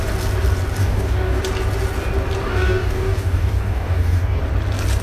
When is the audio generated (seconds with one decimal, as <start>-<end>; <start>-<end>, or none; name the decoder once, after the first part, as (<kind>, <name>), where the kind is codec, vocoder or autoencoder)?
0.8-1.4 (codec, DAC); 2.4-4.4